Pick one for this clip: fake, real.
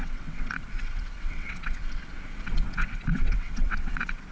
fake